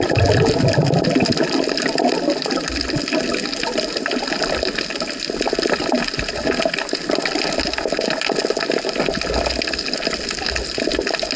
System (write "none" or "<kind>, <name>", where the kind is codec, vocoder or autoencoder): none